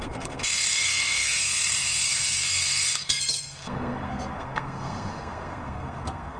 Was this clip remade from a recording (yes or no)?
yes